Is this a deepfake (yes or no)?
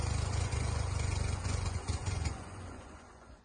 yes